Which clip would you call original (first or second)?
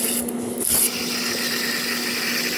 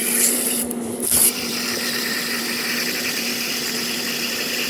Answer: first